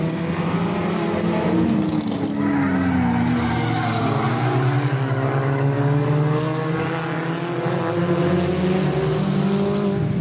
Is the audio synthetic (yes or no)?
no